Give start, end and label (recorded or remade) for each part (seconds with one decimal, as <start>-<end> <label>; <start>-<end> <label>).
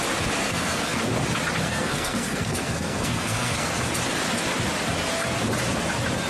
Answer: 0.0-0.4 recorded; 0.4-1.0 remade; 1.0-1.6 recorded; 1.6-3.9 remade; 3.9-6.3 recorded